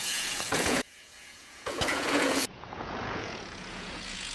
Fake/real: fake